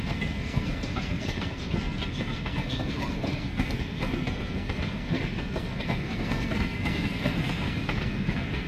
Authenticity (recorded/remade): remade